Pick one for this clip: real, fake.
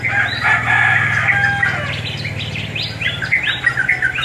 real